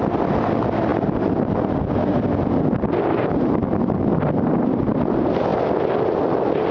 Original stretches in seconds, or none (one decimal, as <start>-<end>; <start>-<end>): 0.0-6.7